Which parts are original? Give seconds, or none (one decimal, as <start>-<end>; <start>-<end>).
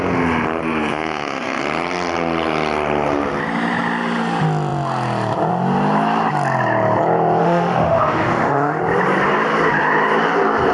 0.0-0.9; 1.6-7.4; 8.8-10.7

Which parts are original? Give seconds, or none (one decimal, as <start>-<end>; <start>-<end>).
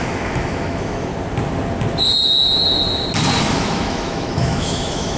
1.1-3.4